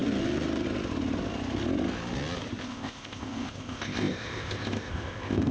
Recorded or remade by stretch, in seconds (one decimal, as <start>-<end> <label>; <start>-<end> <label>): 0.0-2.6 recorded; 2.6-5.5 remade